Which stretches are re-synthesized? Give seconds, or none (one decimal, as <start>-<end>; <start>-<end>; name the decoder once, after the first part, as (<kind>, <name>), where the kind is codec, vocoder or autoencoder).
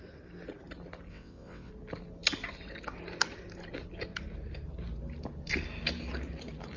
1.1-1.7 (vocoder, WaveNeXt)